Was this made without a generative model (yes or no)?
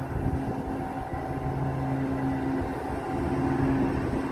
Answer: yes